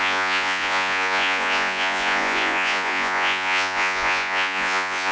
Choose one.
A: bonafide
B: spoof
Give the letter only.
B